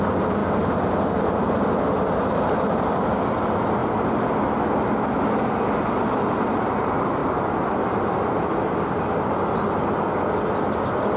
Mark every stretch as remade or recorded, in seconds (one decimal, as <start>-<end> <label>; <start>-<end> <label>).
0.0-11.2 recorded